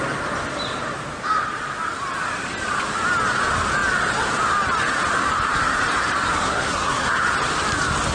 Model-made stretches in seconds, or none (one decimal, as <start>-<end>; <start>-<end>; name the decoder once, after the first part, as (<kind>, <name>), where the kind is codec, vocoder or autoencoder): 6.3-7.2 (codec, SNAC)